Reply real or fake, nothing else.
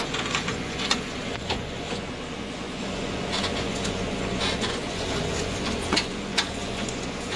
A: fake